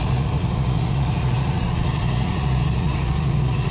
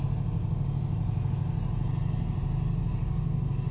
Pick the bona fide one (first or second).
second